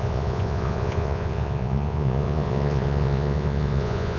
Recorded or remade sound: remade